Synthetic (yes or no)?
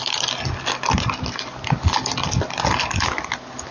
no